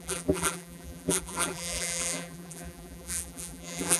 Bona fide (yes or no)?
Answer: no